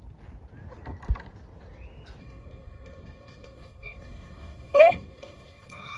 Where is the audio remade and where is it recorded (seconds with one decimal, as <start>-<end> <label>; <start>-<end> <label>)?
0.0-2.2 recorded; 2.2-6.0 remade